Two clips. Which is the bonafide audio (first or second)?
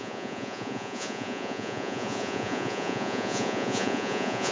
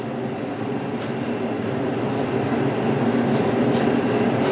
second